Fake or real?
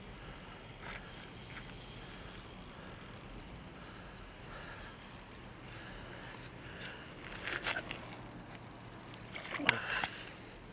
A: real